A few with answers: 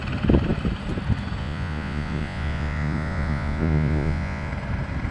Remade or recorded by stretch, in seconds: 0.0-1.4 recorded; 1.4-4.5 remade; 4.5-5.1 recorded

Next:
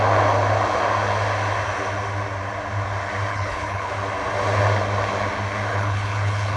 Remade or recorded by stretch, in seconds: 0.0-3.3 recorded; 3.3-3.9 remade; 3.9-5.7 recorded; 5.7-6.6 remade

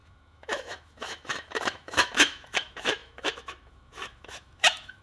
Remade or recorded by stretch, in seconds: 0.0-5.0 remade

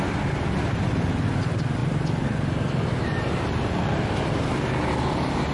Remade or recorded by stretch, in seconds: 0.0-5.5 recorded